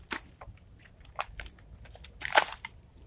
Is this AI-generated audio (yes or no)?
no